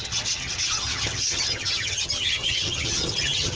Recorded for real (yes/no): no